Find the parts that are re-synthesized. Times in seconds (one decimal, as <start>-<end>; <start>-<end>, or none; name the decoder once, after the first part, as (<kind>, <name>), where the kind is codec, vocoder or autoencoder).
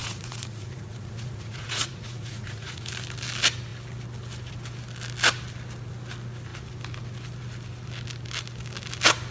0.0-2.9 (vocoder, Vocos)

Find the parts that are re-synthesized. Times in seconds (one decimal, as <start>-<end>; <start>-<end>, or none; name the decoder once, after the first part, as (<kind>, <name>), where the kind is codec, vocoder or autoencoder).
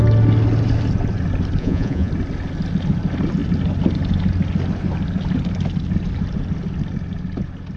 1.6-2.1 (vocoder, Vocos)